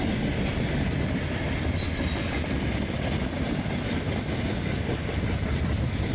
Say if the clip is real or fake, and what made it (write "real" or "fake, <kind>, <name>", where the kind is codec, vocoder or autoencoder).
real